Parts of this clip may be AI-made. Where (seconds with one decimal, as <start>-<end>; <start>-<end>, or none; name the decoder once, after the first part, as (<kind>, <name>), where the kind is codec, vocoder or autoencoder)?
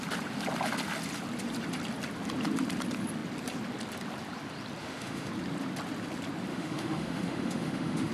4.8-5.3 (autoencoder, DAC-VAE); 6.5-8.1